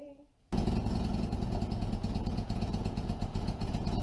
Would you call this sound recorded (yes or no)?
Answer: no